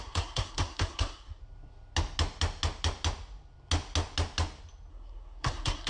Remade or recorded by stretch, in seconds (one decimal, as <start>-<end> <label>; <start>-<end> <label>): 0.0-1.4 remade; 1.4-4.9 recorded; 4.9-5.9 remade